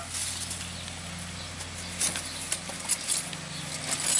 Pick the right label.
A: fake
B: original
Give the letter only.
B